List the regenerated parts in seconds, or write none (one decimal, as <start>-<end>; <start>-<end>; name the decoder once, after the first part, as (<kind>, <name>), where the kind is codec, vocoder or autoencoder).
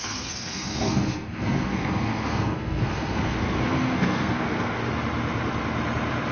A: 0.0-4.8 (codec, SNAC)